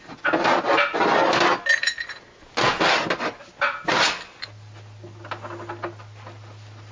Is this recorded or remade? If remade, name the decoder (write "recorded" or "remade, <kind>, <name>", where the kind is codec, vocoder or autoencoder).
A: recorded